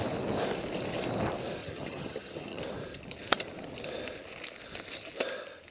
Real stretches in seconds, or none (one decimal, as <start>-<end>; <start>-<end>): 0.0-1.6; 2.6-5.7